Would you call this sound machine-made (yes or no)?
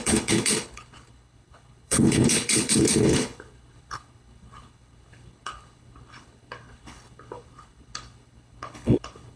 yes